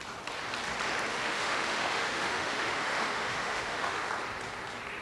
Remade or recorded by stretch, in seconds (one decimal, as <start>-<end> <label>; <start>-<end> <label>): 0.0-1.1 recorded; 1.1-4.1 remade; 4.1-5.0 recorded